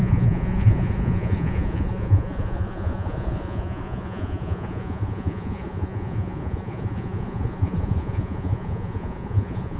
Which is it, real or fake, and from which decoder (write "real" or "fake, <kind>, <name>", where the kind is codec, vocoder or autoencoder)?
fake, vocoder, Vocos